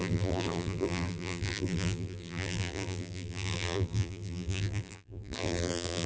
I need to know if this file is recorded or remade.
remade